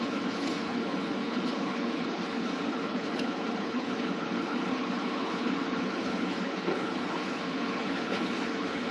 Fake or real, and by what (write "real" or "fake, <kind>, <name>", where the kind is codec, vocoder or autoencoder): fake, codec, HILCodec